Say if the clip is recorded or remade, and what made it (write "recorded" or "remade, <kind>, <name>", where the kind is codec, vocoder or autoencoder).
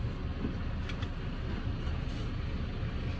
recorded